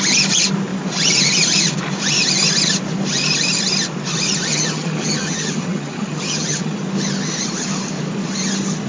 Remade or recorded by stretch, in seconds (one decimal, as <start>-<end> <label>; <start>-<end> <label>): 0.0-4.5 recorded; 4.5-6.8 remade; 6.8-8.9 recorded